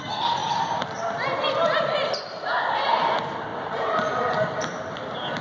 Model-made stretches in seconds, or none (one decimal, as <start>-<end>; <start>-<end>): 0.4-2.2; 3.5-4.1